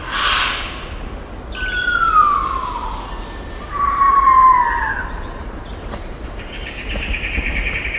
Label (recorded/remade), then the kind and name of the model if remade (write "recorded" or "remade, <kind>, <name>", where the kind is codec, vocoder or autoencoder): recorded